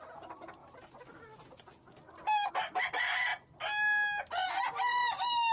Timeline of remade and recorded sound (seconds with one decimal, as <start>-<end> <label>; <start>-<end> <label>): 0.0-5.5 recorded